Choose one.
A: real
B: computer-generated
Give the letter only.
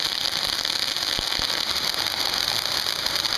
A